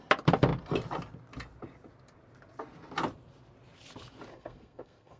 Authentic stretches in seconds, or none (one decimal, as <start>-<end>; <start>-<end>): 0.0-4.3